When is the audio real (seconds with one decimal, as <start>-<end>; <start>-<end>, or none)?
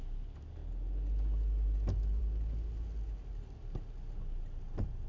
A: 0.0-5.1